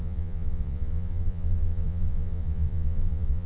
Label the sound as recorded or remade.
remade